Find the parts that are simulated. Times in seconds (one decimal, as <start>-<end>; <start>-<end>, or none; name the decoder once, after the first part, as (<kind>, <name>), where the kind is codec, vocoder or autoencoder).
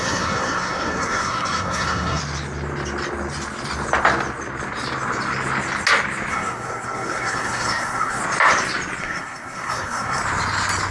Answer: 0.0-2.2 (codec, SNAC); 6.3-8.2; 9.0-10.2